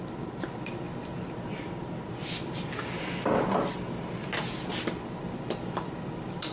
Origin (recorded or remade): recorded